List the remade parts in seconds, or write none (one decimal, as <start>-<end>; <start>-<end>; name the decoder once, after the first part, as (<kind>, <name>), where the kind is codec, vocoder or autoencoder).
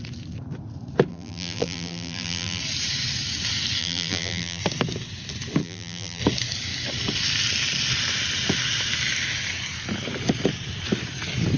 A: 1.1-2.6 (vocoder, BigVGAN v2); 3.8-4.6; 5.6-6.2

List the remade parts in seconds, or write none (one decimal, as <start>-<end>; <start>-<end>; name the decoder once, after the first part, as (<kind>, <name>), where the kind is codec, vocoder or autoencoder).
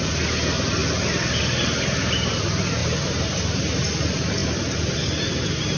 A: 2.8-3.8 (vocoder, BigVGAN v2)